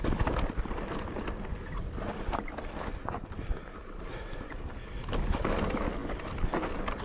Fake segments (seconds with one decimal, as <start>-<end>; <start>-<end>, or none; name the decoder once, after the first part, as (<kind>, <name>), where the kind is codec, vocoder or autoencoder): none